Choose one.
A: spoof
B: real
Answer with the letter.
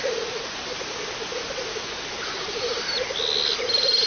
B